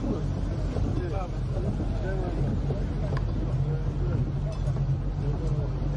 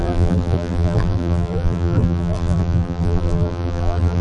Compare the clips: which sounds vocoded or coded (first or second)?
second